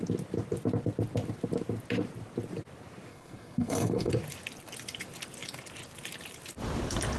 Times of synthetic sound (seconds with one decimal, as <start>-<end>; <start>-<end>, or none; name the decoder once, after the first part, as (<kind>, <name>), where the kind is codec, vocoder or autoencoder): 3.1-4.1 (codec, SNAC)